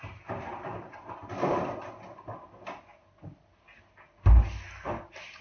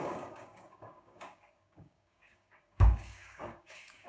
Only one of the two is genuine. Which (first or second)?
first